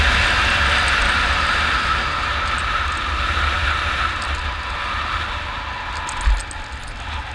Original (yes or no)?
yes